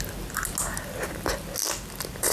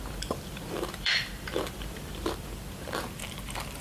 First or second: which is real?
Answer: first